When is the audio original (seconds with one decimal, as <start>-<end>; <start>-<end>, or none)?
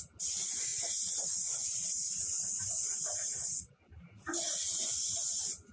0.0-5.7